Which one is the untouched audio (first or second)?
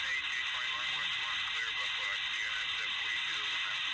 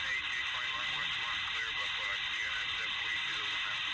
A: first